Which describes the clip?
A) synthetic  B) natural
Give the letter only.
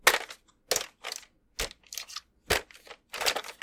B